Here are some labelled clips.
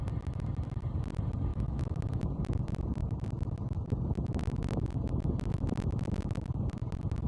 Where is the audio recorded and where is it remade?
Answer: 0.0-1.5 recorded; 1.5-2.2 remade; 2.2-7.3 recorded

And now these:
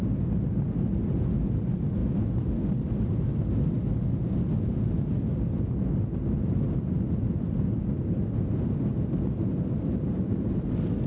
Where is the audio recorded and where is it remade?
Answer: 0.0-11.1 recorded

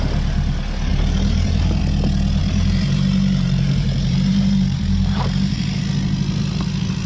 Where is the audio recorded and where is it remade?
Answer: 0.0-0.9 recorded; 0.9-1.8 remade; 1.8-2.4 recorded; 2.4-5.8 remade; 5.8-7.1 recorded

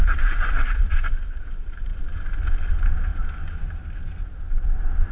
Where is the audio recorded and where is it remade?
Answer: 0.0-5.1 recorded

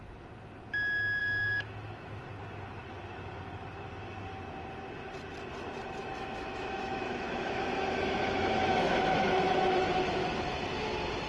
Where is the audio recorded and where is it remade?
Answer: 0.0-1.2 recorded; 1.2-2.2 remade; 2.2-6.0 recorded; 6.0-9.9 remade; 9.9-11.3 recorded

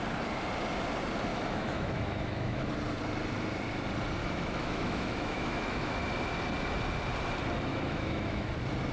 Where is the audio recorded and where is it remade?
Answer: 0.0-1.3 recorded; 1.3-2.7 remade; 2.7-4.2 recorded; 4.2-6.0 remade; 6.0-7.7 recorded; 7.7-8.5 remade; 8.5-8.9 recorded

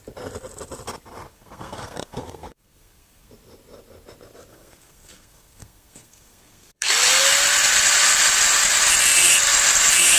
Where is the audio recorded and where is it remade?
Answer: 0.0-1.3 recorded; 1.3-3.3 remade; 3.3-4.5 recorded; 4.5-6.9 remade; 6.9-10.2 recorded

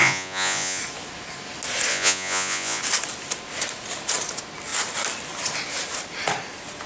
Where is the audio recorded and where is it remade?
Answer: 0.0-0.8 remade; 0.8-1.9 recorded; 1.9-2.8 remade; 2.8-6.9 recorded